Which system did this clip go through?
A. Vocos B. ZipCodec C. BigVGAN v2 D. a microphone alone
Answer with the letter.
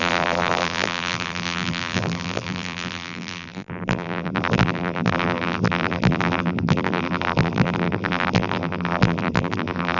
C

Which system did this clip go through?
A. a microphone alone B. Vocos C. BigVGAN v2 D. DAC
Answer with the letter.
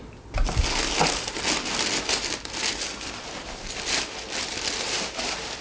A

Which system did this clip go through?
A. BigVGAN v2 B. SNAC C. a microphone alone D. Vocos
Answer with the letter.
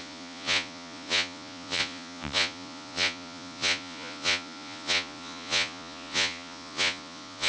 D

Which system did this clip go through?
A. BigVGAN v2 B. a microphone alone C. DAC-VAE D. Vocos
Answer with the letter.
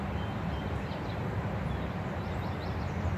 A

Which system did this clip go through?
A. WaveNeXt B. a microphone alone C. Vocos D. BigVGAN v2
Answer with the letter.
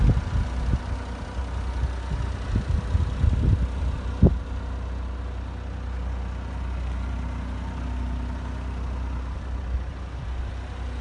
B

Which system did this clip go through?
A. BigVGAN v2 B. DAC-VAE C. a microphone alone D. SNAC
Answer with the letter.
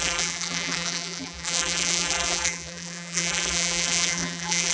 A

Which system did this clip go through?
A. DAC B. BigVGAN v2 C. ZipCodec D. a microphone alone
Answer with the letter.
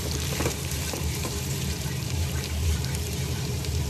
B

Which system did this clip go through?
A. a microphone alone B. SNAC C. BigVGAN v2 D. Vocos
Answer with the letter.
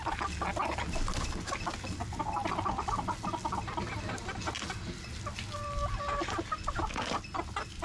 A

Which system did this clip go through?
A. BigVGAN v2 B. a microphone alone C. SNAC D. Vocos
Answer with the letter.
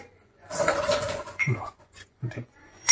D